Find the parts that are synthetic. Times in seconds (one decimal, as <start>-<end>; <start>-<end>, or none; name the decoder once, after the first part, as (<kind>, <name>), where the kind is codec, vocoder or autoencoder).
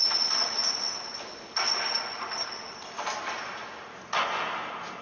none